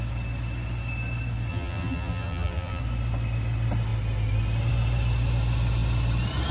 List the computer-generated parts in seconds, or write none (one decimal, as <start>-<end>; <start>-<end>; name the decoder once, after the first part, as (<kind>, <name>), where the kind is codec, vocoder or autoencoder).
1.5-2.8 (vocoder, BigVGAN v2)